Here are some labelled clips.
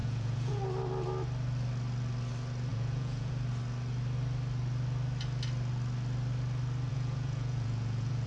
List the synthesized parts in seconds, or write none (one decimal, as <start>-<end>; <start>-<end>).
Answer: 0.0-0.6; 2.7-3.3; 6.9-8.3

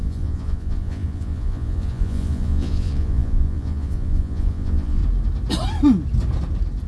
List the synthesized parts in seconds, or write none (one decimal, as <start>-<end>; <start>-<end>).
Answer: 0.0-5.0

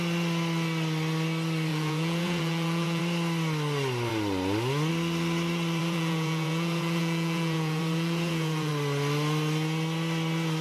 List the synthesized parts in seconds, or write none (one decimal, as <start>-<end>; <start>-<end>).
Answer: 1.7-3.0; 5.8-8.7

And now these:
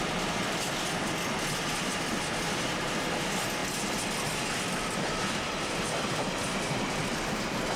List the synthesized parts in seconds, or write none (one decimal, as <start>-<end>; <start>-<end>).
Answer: none

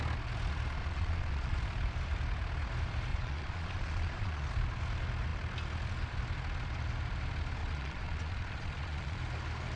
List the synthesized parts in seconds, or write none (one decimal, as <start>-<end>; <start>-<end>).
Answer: 0.8-1.6; 3.1-4.5; 7.6-9.2